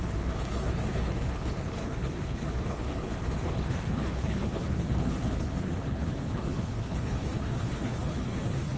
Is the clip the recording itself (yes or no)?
no